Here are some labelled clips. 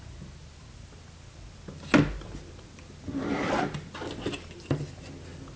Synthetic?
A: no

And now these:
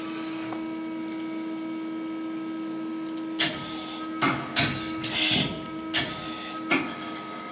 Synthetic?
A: no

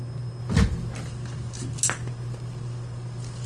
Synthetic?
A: no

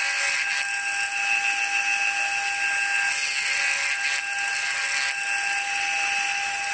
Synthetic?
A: no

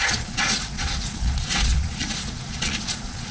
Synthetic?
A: yes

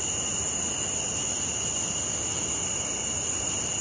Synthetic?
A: no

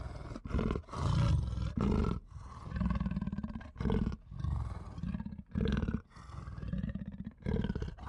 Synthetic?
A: no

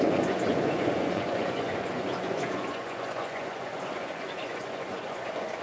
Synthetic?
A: yes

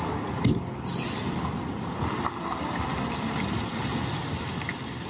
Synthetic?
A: no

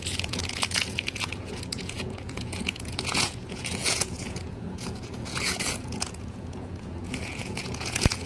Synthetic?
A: yes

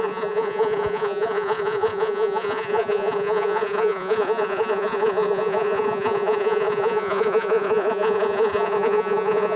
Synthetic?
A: yes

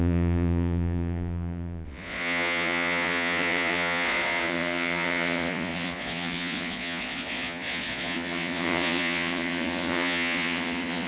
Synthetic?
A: yes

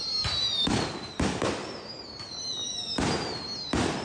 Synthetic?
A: no